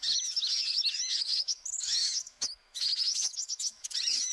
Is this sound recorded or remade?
remade